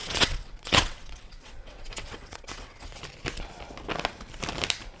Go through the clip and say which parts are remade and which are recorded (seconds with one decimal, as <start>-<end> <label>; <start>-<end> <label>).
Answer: 0.0-3.0 remade; 3.0-5.0 recorded